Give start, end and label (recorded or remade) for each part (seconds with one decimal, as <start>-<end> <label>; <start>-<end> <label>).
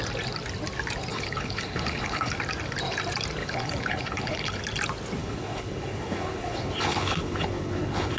0.0-1.1 recorded; 1.1-2.3 remade; 2.3-3.4 recorded; 3.4-4.6 remade; 4.6-5.2 recorded; 5.2-8.2 remade